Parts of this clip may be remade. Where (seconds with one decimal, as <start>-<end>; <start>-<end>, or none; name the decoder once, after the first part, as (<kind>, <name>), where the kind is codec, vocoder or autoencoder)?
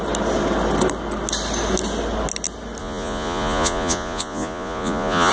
2.8-5.3 (vocoder, Vocos)